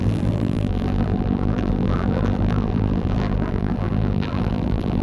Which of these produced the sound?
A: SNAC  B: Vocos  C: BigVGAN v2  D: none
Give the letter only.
C